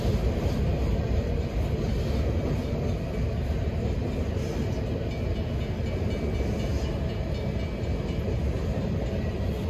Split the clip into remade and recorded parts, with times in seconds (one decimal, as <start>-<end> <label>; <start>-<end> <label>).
0.0-9.7 recorded